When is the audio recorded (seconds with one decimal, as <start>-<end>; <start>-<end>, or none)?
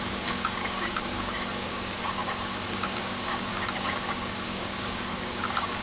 2.2-2.7